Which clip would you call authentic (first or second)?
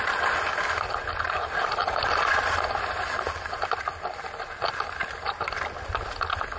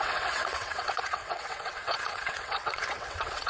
first